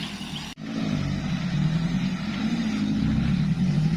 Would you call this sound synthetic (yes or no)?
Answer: no